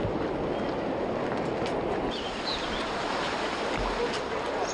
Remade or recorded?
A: recorded